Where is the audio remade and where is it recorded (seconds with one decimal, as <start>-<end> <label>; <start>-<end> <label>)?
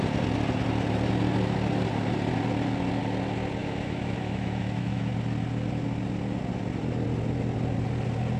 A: 0.0-3.6 recorded; 3.6-5.1 remade; 5.1-8.4 recorded